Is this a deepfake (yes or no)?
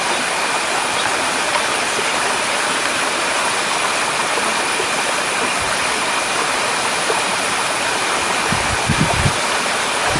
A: no